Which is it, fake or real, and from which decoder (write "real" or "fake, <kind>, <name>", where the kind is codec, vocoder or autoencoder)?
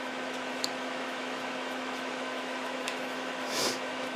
fake, autoencoder, DAC-VAE